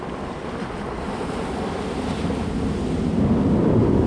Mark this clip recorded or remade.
recorded